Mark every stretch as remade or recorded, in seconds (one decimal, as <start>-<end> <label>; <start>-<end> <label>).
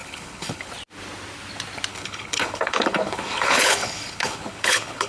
0.0-0.7 remade; 0.7-1.9 recorded; 1.9-5.1 remade